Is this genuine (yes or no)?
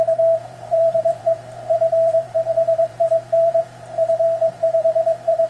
no